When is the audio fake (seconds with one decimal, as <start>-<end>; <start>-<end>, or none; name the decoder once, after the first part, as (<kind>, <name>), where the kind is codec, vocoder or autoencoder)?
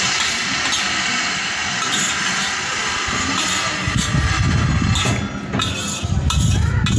none